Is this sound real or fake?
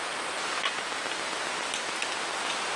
real